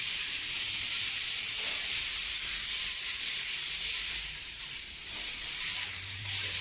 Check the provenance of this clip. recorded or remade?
remade